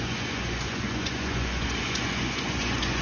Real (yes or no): no